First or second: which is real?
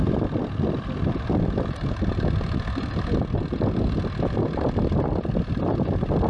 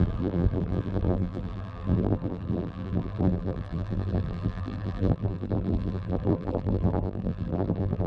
first